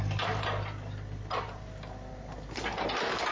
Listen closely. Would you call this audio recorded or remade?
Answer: recorded